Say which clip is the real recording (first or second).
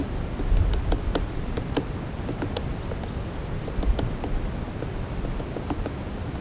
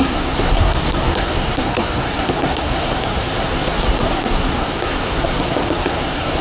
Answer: first